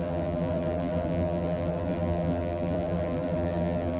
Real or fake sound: fake